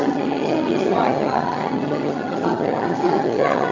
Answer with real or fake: fake